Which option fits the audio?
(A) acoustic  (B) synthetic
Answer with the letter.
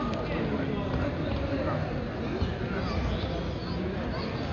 A